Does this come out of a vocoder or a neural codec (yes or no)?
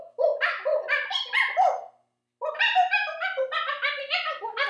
no